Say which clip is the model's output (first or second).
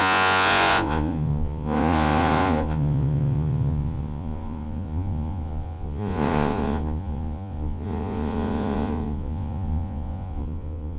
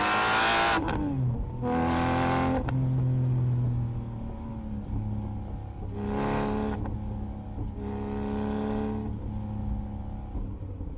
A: first